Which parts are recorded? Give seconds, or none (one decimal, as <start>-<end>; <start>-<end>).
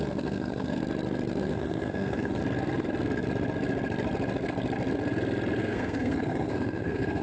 0.8-1.4; 2.4-5.6